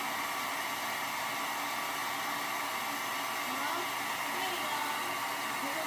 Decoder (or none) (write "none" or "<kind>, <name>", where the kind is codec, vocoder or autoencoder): none